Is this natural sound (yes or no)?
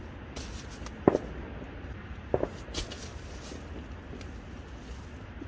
yes